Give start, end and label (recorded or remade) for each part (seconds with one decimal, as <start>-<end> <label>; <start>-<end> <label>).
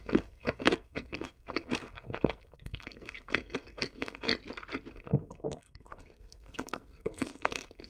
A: 0.0-4.3 remade; 4.3-4.9 recorded; 4.9-7.9 remade